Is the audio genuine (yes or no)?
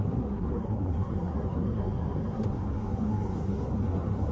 no